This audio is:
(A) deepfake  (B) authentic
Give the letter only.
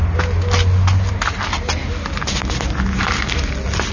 B